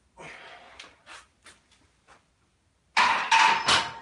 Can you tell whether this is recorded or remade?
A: recorded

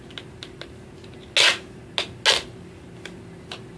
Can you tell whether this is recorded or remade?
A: recorded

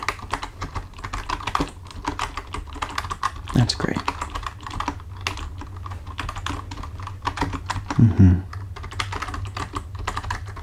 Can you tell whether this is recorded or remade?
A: recorded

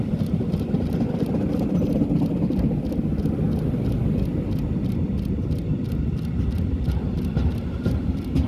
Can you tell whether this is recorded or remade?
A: recorded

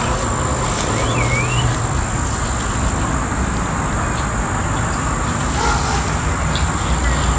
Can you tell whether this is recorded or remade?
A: recorded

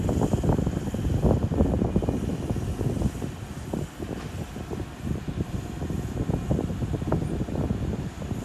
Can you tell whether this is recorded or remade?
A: recorded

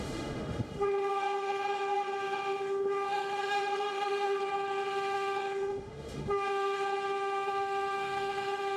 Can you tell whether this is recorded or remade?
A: remade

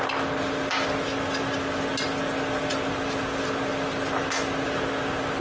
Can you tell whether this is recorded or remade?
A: recorded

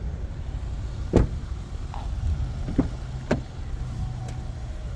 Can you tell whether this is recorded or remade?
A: recorded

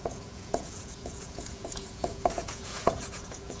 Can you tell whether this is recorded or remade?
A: remade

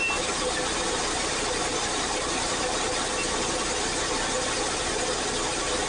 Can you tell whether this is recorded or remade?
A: recorded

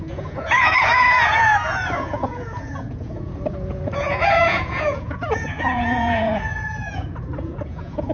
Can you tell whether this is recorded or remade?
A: remade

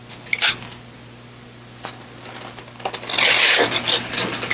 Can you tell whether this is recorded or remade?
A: recorded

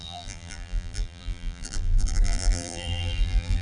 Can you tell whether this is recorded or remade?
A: remade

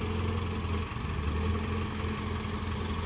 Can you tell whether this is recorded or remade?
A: recorded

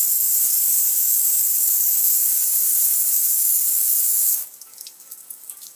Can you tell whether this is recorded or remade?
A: remade